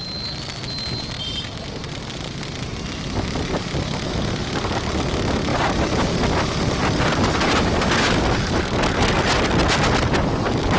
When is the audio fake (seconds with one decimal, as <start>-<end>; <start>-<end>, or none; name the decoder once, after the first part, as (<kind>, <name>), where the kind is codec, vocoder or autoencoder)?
none

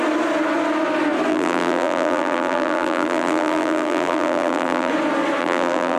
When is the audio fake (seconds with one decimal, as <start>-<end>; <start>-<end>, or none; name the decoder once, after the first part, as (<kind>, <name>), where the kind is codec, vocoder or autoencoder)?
1.3-4.9 (vocoder, BigVGAN v2); 5.4-6.0

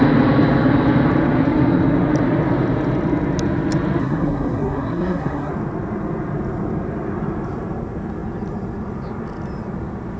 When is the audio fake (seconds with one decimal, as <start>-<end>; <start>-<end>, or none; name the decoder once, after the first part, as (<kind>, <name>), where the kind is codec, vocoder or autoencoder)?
4.0-5.5 (codec, SNAC)